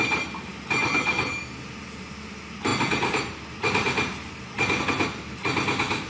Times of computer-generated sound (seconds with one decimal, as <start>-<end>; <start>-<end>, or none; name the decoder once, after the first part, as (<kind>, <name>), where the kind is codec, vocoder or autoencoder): none